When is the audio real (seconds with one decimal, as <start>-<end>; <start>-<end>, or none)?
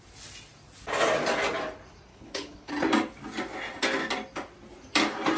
0.0-2.1; 2.7-5.4